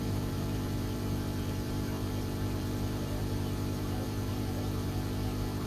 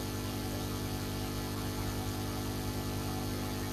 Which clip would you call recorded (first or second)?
second